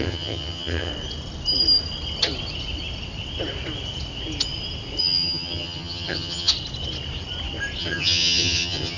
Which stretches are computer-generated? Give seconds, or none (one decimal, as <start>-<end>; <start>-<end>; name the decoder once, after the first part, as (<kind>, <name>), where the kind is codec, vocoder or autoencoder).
0.0-0.9 (vocoder, HiFi-GAN); 5.0-6.5; 7.8-9.0